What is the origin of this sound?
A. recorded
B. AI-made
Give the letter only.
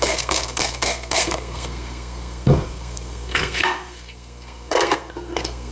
B